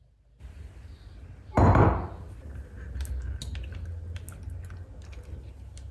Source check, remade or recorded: recorded